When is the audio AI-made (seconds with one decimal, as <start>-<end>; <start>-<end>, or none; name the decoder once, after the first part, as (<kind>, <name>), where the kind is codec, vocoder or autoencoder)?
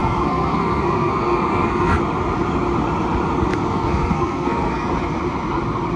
0.0-2.0 (codec, SNAC); 3.5-4.9